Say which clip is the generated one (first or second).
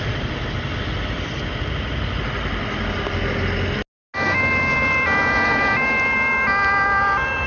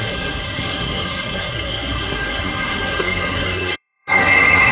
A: second